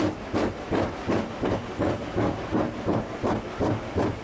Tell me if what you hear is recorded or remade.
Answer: recorded